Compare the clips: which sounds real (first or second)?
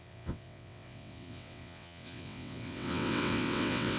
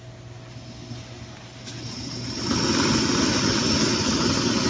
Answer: second